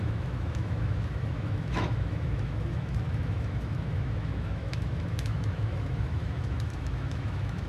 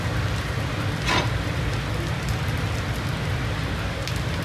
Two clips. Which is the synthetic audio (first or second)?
first